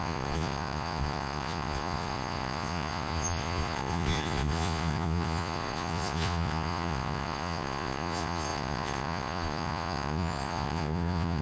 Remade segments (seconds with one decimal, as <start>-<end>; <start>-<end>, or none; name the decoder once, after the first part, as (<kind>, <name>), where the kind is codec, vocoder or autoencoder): 0.0-11.4 (vocoder, Vocos)